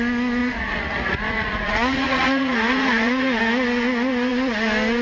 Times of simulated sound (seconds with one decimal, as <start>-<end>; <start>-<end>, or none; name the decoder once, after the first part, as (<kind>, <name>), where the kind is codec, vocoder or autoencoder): 0.4-3.4 (vocoder, Vocos)